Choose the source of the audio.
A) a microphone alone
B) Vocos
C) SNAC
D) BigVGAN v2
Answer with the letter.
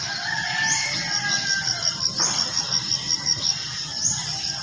A